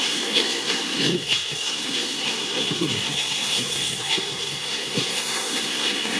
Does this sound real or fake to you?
fake